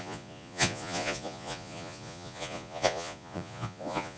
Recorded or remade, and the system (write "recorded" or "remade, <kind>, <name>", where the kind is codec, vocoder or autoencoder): remade, vocoder, Vocos